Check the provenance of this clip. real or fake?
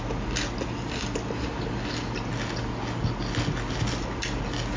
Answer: real